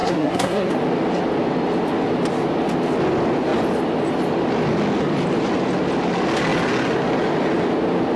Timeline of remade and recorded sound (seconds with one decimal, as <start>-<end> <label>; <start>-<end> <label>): 0.0-0.7 remade; 0.7-8.2 recorded